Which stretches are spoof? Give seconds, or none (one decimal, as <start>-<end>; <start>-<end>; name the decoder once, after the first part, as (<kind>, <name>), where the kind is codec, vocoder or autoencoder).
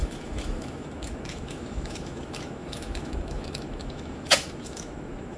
0.0-5.4 (autoencoder, DAC-VAE)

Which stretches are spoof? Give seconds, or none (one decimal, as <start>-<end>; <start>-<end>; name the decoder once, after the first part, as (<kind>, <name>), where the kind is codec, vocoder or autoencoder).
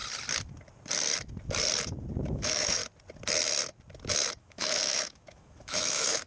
2.3-2.8 (autoencoder, DAC-VAE); 4.4-6.3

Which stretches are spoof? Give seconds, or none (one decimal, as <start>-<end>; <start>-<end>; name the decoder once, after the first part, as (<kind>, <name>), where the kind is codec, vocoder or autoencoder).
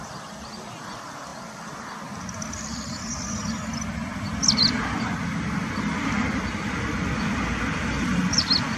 none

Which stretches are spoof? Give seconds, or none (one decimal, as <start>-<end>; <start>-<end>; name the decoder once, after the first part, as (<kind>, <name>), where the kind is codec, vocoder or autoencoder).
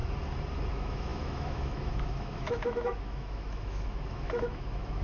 0.7-5.0 (autoencoder, DAC-VAE)